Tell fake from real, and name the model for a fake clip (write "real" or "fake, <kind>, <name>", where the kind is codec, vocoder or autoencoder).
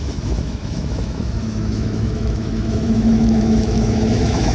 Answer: fake, autoencoder, DAC-VAE